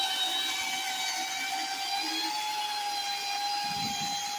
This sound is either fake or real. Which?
real